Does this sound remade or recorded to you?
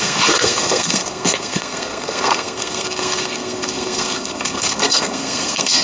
remade